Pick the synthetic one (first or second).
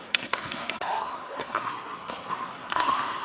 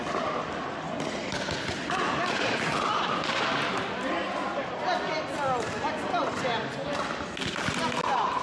first